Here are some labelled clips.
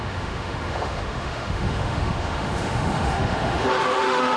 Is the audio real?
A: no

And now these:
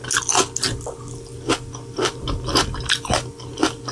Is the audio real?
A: yes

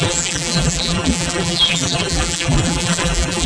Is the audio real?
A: no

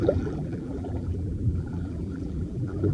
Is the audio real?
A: no